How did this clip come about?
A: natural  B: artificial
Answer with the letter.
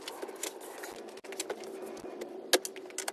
A